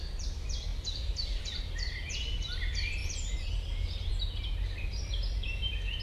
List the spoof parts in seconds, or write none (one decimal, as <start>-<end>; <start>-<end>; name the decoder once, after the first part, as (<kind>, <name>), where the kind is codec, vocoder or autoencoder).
none